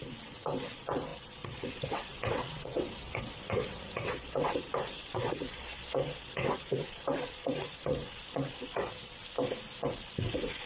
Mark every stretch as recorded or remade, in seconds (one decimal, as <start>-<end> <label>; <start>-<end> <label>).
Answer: 0.0-9.2 remade; 9.2-9.8 recorded; 9.8-10.7 remade